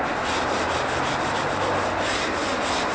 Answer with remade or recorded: recorded